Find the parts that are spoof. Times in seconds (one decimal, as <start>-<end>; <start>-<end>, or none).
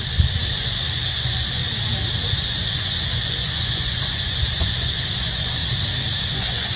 0.0-1.6; 2.3-5.6; 6.2-6.8